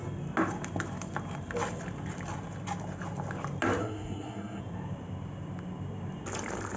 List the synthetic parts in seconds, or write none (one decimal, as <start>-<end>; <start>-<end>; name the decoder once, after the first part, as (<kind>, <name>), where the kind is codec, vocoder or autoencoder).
3.8-4.6 (codec, SNAC)